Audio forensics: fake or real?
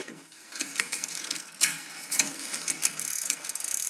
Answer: fake